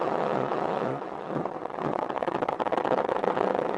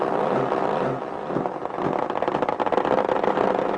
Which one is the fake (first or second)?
first